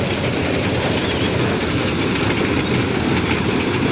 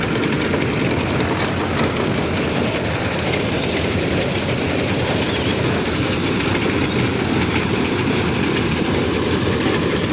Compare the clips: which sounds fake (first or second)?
second